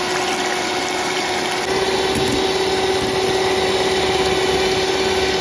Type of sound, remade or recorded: recorded